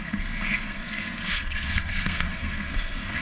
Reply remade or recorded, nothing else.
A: remade